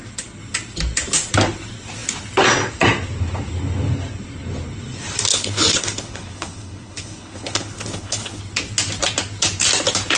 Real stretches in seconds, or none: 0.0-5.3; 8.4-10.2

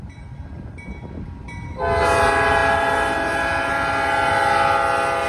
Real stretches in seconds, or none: 0.0-5.3

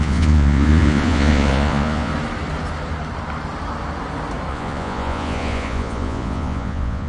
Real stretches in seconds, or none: 2.1-4.5

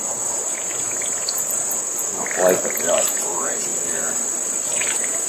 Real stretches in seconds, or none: 2.1-3.0; 3.7-4.7

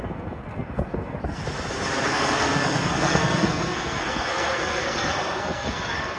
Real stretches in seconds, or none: 1.4-2.1

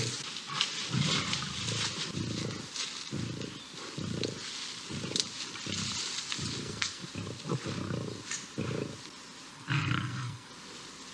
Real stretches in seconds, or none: 0.0-6.6; 7.1-9.5; 10.5-11.1

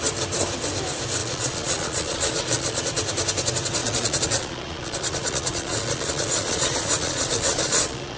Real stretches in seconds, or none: 0.0-1.2; 2.8-3.8

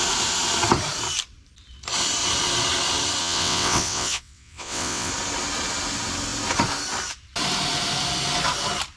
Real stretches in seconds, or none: 0.0-3.2; 5.1-9.0